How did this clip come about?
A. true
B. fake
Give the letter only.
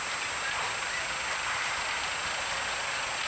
A